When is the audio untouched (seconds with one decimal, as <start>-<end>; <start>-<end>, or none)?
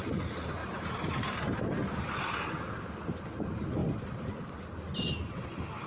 0.0-0.6; 1.9-5.9